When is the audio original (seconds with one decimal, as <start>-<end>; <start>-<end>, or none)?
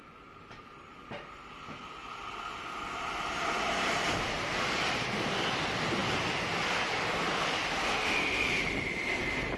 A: 0.0-9.6